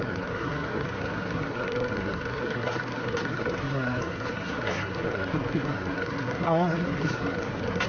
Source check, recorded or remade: remade